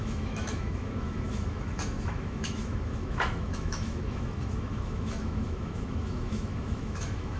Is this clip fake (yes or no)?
yes